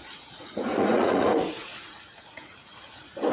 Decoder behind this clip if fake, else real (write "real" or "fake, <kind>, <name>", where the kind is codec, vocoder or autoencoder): fake, vocoder, Vocos